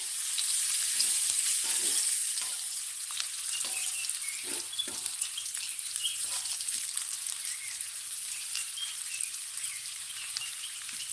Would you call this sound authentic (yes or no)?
no